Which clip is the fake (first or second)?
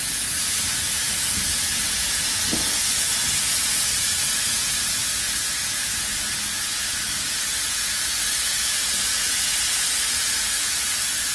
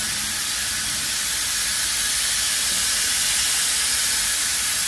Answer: first